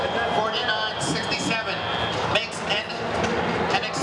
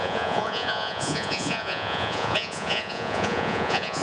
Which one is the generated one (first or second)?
second